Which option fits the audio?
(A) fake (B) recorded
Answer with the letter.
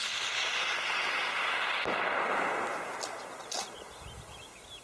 B